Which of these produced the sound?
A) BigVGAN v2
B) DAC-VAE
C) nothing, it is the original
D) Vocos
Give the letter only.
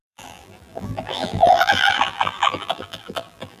A